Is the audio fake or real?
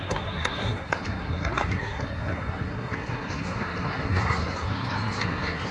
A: fake